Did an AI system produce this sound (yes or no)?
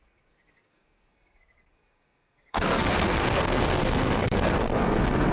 yes